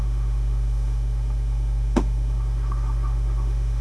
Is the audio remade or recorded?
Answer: remade